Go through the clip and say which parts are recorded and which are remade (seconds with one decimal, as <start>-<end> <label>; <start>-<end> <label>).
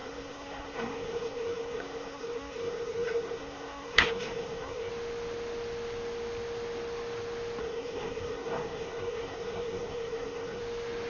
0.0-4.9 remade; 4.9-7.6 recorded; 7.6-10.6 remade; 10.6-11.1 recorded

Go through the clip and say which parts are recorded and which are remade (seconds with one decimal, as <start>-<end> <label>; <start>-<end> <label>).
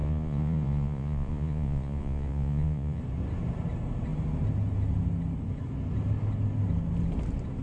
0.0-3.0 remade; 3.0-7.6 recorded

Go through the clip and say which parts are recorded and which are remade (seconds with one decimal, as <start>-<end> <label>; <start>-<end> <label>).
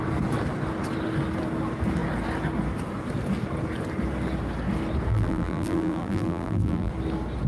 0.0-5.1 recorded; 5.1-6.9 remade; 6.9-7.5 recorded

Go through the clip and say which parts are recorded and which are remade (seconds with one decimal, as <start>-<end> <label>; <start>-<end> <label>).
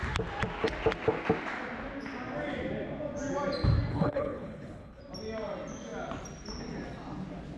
0.0-3.9 recorded; 3.9-5.0 remade; 5.0-7.6 recorded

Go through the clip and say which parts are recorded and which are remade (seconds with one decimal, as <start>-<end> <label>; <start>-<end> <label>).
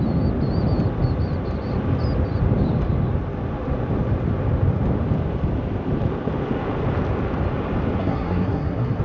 0.0-8.0 recorded; 8.0-9.0 remade